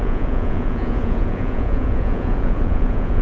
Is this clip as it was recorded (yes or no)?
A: no